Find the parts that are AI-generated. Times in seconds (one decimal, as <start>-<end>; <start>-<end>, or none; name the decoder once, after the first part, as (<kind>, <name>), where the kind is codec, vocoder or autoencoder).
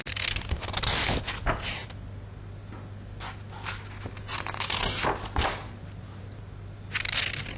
none